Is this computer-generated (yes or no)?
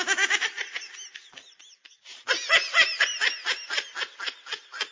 no